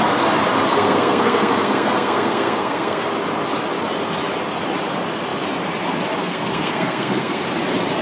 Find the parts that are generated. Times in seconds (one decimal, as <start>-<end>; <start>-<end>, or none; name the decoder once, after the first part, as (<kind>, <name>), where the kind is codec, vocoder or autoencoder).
0.7-3.1 (codec, SNAC); 6.2-7.4